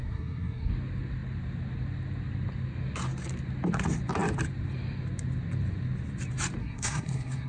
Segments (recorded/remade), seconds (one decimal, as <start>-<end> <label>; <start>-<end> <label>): 0.0-0.7 remade; 0.7-6.6 recorded; 6.6-7.5 remade